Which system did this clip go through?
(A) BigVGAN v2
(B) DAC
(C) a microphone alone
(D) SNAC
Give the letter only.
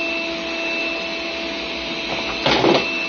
C